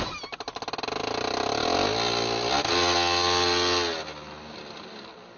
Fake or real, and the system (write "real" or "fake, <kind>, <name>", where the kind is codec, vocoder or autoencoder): real